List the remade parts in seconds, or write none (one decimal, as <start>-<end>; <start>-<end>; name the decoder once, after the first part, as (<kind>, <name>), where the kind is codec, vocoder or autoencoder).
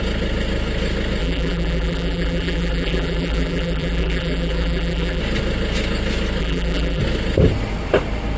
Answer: 1.2-5.2 (vocoder, BigVGAN v2); 6.4-7.0